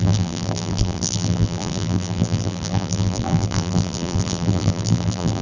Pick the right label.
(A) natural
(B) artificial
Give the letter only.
B